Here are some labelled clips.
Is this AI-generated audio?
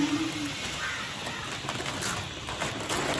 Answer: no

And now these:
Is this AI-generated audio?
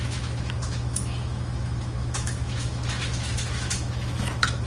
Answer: yes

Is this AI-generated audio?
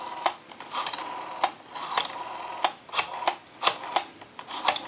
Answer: no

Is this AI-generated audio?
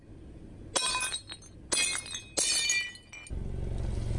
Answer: no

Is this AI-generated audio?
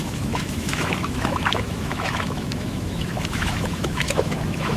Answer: yes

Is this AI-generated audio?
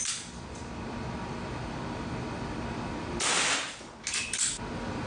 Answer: no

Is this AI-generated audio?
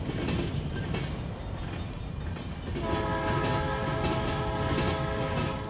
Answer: no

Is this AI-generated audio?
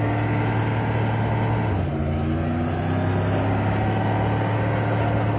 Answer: no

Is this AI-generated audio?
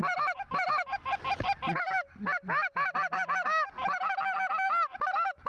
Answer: no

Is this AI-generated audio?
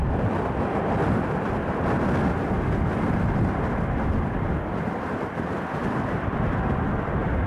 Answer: no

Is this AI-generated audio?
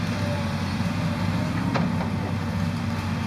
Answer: no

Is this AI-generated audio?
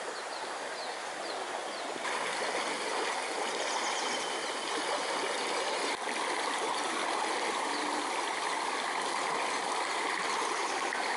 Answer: no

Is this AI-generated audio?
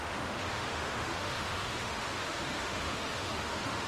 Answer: yes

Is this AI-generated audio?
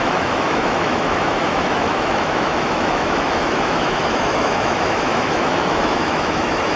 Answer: yes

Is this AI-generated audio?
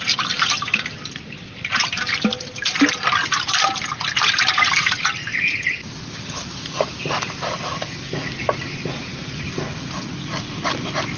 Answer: no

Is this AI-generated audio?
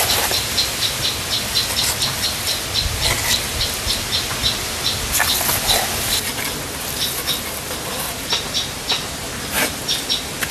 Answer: no